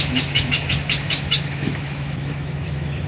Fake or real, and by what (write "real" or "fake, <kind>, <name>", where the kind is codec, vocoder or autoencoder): fake, autoencoder, DAC-VAE